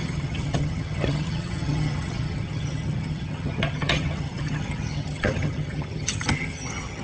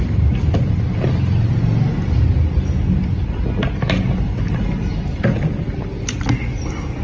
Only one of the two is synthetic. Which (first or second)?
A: first